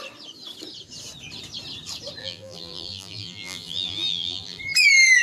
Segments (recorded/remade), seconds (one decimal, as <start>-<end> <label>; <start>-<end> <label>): 0.0-2.2 recorded; 2.2-4.6 remade; 4.6-5.2 recorded